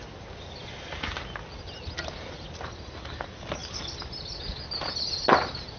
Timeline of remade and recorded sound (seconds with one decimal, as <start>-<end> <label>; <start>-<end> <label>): 0.0-5.8 recorded